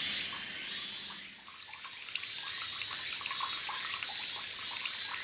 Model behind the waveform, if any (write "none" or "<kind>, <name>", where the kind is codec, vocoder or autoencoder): none